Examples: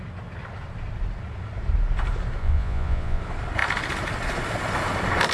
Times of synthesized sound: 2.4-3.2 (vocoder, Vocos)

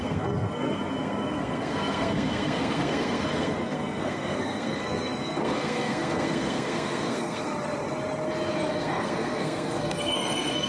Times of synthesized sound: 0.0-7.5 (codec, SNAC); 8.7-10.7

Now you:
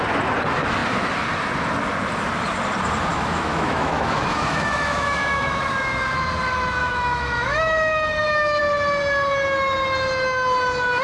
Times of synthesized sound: 3.1-5.6 (autoencoder, DAC-VAE); 6.8-8.6

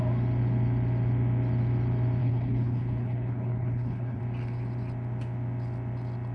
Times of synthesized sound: 2.2-4.2 (codec, HILCodec)

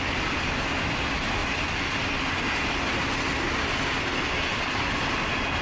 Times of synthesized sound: none

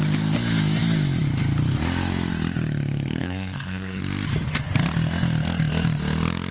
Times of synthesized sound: 3.2-4.0 (codec, SNAC)